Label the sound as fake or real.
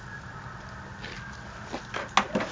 real